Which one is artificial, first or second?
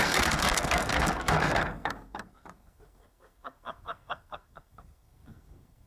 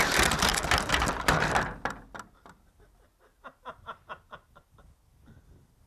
first